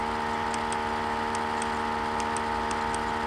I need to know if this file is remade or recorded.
recorded